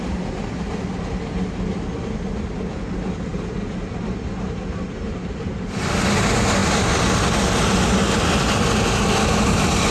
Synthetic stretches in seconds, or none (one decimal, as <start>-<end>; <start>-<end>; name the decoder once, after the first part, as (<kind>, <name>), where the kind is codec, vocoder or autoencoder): 3.3-5.5 (vocoder, BigVGAN v2)